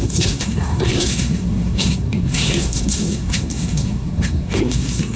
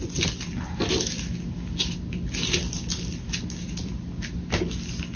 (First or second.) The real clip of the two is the second